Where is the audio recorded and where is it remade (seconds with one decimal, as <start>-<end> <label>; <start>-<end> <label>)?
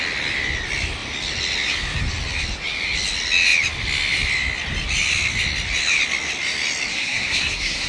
0.0-6.9 recorded; 6.9-7.9 remade